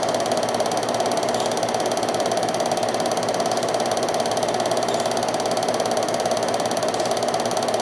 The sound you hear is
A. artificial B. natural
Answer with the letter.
B